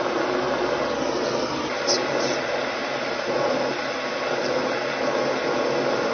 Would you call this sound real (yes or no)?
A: yes